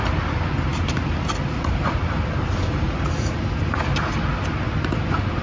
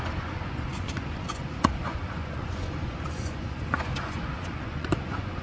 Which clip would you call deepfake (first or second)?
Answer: second